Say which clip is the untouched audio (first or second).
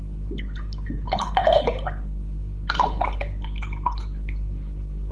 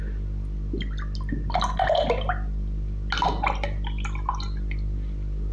second